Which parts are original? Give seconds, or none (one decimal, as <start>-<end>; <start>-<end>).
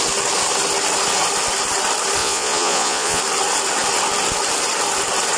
0.0-2.2; 3.2-5.4